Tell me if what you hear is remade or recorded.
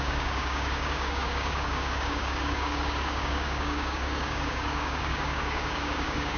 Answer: remade